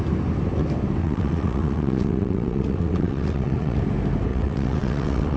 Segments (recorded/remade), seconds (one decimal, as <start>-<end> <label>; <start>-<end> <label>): 0.0-1.0 recorded; 1.0-3.8 remade; 3.8-4.3 recorded; 4.3-5.4 remade